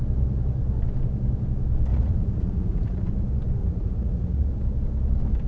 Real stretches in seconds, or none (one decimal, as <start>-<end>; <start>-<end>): 0.0-1.9; 3.1-3.6; 4.5-5.5